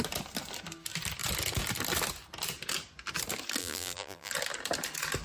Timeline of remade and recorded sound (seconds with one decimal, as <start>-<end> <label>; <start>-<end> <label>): 0.0-3.6 recorded; 3.6-4.3 remade; 4.3-5.2 recorded